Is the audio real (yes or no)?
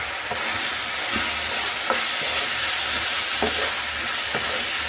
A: yes